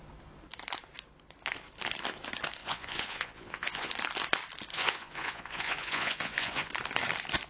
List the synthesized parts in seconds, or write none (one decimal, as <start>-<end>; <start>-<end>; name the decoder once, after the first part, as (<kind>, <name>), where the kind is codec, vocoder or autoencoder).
2.6-3.9 (vocoder, Vocos); 4.7-6.7